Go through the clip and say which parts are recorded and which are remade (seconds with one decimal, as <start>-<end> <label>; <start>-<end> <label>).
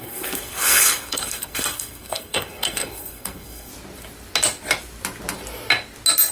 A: 0.0-3.7 remade; 3.7-6.3 recorded